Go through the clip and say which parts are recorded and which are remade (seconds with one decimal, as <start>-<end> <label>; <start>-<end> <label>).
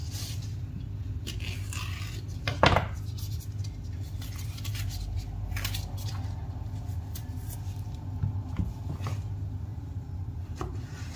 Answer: 0.0-9.7 recorded; 9.7-11.2 remade